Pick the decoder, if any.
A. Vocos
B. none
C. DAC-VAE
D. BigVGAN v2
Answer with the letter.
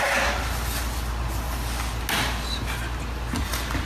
B